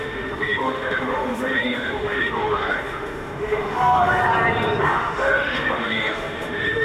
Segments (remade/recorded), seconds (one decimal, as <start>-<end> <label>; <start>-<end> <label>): 0.0-4.2 remade; 4.2-4.8 recorded; 4.8-6.8 remade